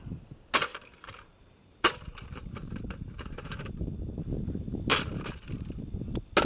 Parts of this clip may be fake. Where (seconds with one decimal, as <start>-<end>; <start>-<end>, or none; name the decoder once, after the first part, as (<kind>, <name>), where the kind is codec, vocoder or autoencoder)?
0.7-3.9 (vocoder, BigVGAN v2)